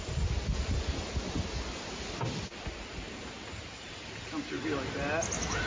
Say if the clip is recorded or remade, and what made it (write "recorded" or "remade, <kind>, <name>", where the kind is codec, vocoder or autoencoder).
recorded